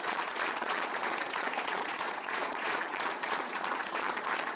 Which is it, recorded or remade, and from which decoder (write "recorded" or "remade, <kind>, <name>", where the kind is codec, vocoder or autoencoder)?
remade, vocoder, Vocos